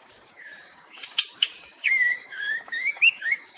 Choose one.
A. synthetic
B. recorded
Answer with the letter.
A